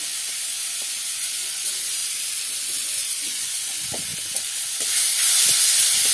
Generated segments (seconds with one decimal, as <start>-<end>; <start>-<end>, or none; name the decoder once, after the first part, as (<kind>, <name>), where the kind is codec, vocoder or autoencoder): 0.0-2.0 (vocoder, Vocos); 2.5-4.1